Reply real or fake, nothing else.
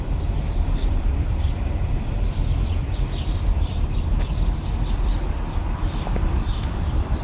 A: fake